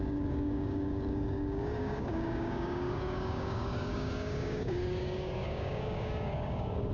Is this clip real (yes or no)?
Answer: no